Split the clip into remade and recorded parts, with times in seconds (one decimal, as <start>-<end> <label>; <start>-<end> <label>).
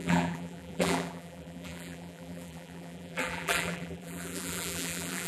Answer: 0.0-5.3 remade